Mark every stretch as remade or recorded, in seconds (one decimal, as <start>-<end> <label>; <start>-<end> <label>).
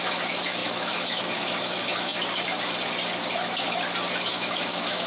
0.0-2.1 remade; 2.1-4.3 recorded; 4.3-5.1 remade